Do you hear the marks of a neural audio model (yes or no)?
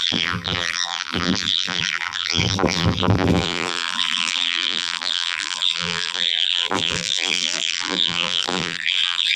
yes